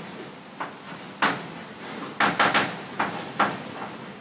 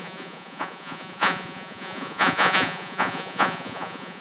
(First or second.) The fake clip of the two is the second